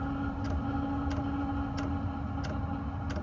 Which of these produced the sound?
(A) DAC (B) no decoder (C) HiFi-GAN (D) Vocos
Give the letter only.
B